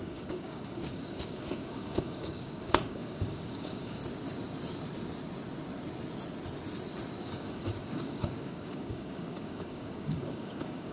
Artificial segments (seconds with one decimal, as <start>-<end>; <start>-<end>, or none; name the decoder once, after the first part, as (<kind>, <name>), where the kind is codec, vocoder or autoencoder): 0.0-4.0 (codec, DAC); 7.2-10.9

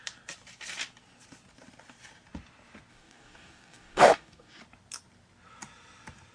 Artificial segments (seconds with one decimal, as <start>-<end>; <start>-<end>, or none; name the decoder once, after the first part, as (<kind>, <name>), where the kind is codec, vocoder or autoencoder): 2.9-4.6 (codec, DAC)